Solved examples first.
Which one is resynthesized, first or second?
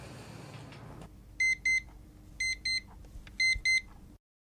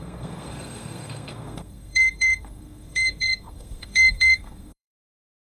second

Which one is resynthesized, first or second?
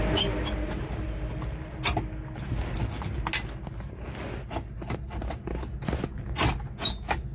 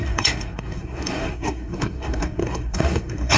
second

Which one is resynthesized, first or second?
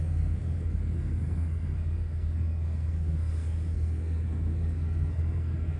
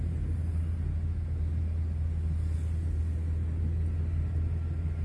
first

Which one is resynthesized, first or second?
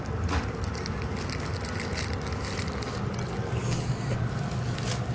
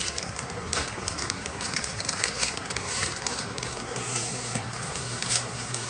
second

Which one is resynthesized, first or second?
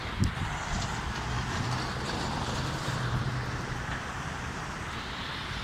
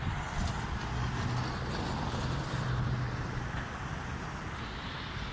first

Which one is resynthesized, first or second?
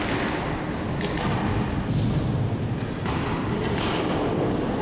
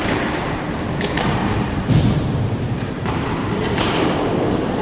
second